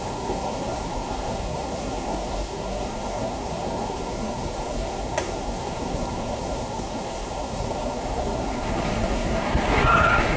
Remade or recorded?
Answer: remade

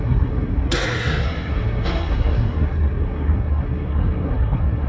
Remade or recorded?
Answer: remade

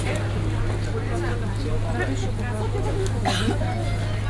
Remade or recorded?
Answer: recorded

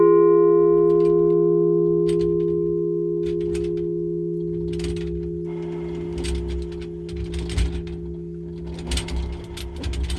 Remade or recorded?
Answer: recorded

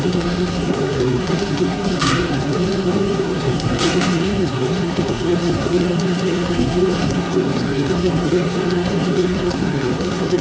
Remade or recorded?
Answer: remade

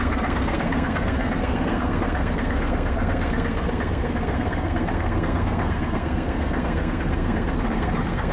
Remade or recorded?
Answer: remade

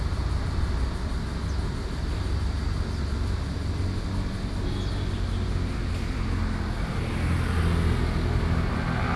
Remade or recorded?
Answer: recorded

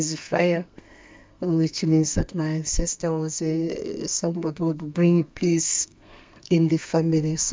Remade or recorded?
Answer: remade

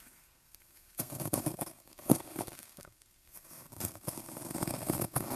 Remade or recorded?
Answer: remade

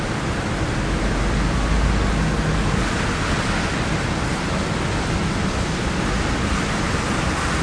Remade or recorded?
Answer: recorded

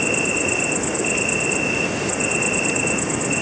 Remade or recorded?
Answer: recorded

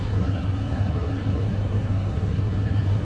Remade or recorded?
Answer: remade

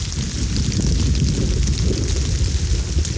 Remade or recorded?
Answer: recorded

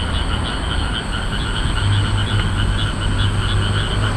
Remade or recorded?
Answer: recorded